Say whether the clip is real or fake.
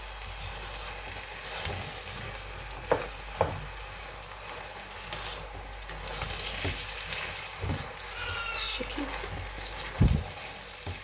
real